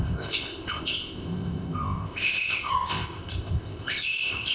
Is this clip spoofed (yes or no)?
yes